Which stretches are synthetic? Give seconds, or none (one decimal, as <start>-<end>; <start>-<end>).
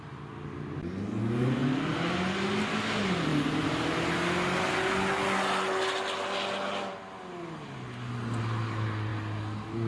none